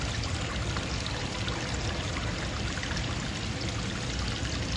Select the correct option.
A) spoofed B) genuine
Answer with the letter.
B